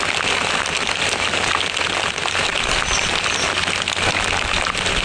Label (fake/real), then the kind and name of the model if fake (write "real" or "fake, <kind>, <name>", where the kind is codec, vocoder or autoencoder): real